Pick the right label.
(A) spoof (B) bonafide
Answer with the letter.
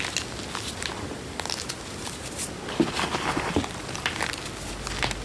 B